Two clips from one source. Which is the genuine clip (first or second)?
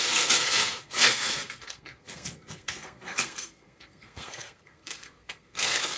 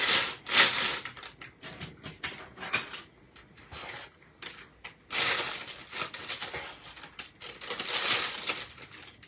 second